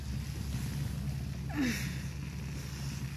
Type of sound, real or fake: real